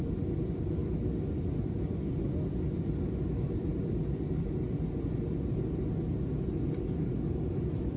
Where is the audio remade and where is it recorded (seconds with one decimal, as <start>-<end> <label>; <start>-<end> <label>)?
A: 0.0-8.0 recorded